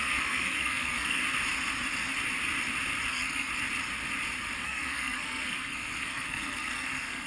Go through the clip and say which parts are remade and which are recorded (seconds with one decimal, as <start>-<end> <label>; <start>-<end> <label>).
0.0-1.2 remade; 1.2-3.1 recorded; 3.1-3.5 remade; 3.5-4.6 recorded; 4.6-7.3 remade